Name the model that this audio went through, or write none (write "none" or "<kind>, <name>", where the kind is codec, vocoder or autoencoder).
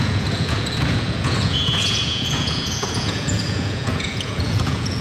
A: vocoder, Vocos